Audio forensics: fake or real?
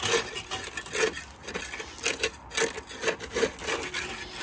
real